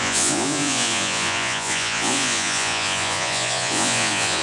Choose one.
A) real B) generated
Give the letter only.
B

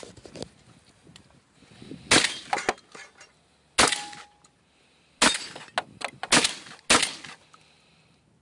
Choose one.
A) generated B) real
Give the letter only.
B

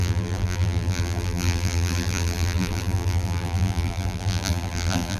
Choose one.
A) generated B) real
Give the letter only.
A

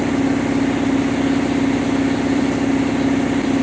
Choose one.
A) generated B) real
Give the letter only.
A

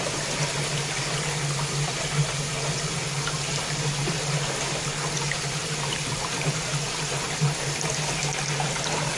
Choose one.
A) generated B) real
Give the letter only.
B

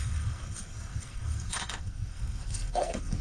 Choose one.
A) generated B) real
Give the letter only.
A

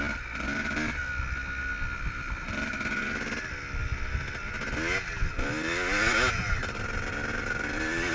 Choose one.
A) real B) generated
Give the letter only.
A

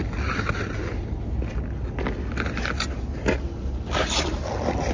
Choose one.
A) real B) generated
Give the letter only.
A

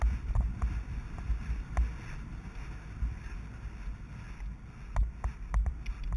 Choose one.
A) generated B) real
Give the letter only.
B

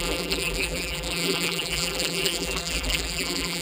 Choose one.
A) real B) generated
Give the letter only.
B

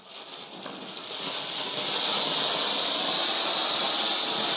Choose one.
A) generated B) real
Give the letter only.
B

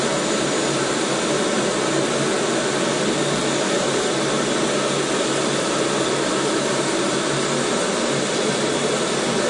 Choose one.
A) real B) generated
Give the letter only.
A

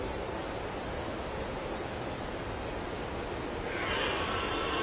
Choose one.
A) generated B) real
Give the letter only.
B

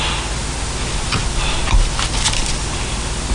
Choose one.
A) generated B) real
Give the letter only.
B